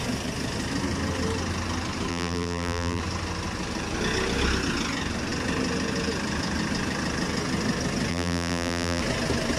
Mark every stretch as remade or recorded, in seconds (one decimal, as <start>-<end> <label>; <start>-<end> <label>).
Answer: 0.0-2.1 recorded; 2.1-3.0 remade; 3.0-8.1 recorded; 8.1-9.0 remade; 9.0-9.6 recorded